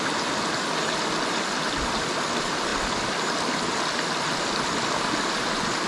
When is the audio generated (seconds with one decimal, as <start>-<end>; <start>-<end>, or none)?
none